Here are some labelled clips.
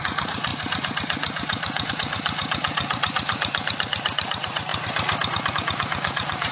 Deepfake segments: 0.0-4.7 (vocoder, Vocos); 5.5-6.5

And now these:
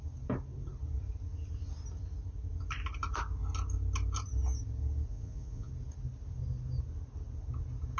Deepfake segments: 5.1-5.7 (vocoder, Vocos)

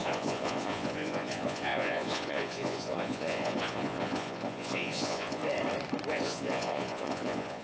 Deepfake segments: 0.0-5.4 (vocoder, Vocos); 6.1-7.6

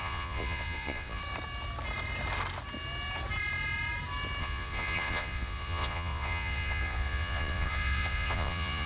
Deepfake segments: 0.0-1.2 (vocoder, Vocos); 4.4-8.9

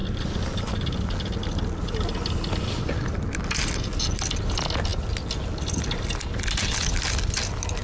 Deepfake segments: none

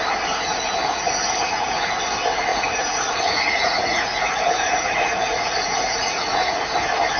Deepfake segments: 0.8-1.9 (vocoder, Vocos); 2.5-6.6